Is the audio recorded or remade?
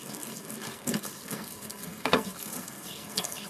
remade